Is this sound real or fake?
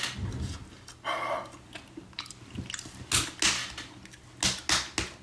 real